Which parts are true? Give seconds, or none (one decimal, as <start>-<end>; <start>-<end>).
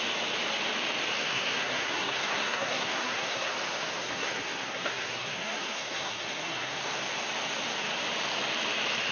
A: 0.0-1.2; 3.5-4.0; 6.8-9.1